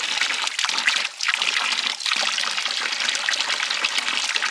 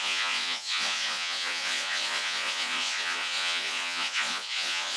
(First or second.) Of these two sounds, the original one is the first